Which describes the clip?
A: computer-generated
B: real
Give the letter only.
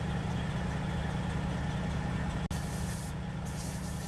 B